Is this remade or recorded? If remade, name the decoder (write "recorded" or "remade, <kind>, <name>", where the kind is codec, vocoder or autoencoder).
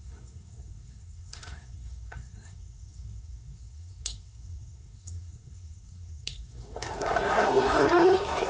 remade, codec, SNAC